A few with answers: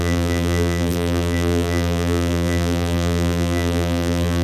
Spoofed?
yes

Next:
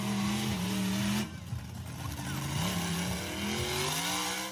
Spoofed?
no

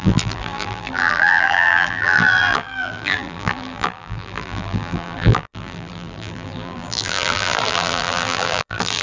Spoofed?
yes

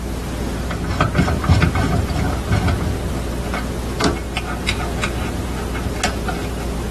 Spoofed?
no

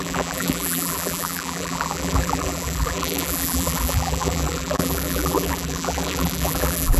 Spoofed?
yes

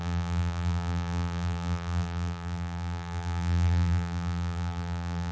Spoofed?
yes